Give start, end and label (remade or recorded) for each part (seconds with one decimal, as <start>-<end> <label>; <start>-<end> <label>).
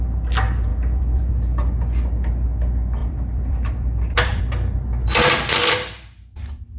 0.0-0.7 recorded; 0.7-1.3 remade; 1.3-3.0 recorded; 3.0-4.4 remade; 4.4-6.8 recorded